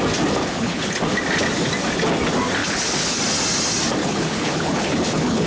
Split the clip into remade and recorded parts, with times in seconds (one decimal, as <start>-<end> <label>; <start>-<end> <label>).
0.0-0.4 recorded; 0.4-0.9 remade; 0.9-2.6 recorded; 2.6-3.2 remade; 3.2-4.0 recorded; 4.0-5.5 remade

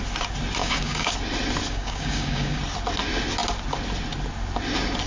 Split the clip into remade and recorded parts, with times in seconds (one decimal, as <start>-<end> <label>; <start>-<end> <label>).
0.0-0.6 recorded; 0.6-1.1 remade; 1.1-1.7 recorded; 1.7-2.6 remade; 2.6-5.1 recorded

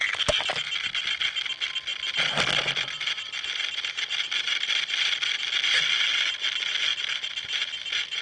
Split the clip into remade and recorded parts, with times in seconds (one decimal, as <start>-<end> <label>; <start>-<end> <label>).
0.0-8.2 recorded

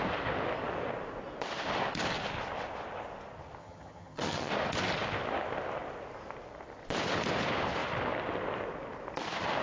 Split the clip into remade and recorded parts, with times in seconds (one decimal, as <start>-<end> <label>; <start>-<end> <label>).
0.0-3.6 recorded; 3.6-4.5 remade; 4.5-9.6 recorded

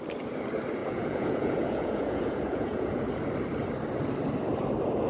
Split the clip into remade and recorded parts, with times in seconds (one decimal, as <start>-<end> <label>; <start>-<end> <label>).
0.0-0.8 recorded; 0.8-3.1 remade; 3.1-5.1 recorded

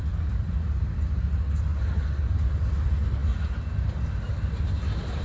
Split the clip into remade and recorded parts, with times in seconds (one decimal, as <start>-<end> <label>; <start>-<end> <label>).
0.0-1.7 remade; 1.7-2.8 recorded; 2.8-3.2 remade; 3.2-5.2 recorded

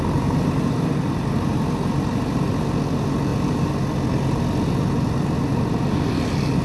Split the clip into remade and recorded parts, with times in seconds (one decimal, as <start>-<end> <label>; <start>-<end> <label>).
0.0-6.6 recorded

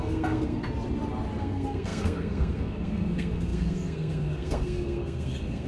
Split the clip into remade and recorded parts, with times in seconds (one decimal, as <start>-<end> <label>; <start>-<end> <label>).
0.0-0.6 remade; 0.6-1.4 recorded; 1.4-5.7 remade